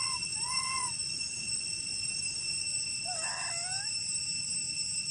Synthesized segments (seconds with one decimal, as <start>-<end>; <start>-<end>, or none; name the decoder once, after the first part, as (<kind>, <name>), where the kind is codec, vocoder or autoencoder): 0.0-1.8 (vocoder, Vocos)